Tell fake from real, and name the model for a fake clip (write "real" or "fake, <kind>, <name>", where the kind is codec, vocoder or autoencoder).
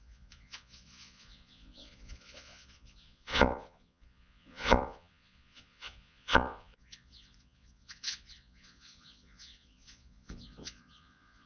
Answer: fake, vocoder, Vocos